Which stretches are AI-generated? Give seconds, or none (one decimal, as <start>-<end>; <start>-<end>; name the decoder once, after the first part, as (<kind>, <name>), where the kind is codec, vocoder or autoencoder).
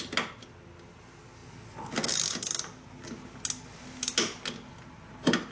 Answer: none